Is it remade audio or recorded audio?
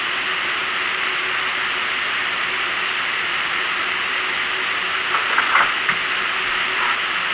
recorded